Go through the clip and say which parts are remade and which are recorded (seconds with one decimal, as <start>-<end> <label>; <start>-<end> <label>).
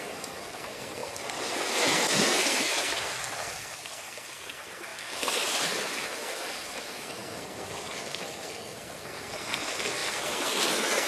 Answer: 0.0-11.1 remade